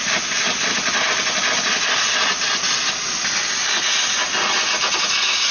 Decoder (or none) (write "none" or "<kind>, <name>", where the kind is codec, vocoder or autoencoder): none